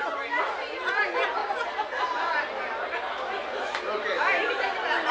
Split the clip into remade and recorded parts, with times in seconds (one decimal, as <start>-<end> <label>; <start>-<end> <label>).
0.0-5.1 recorded